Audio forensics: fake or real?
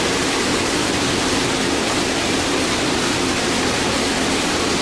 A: fake